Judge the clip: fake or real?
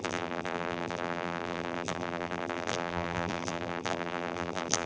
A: fake